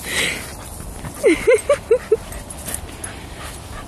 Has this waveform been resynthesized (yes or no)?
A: no